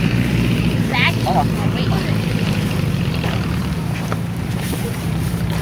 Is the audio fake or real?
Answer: fake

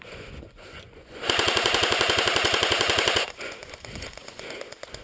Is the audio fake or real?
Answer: fake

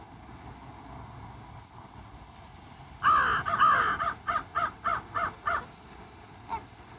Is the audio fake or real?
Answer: real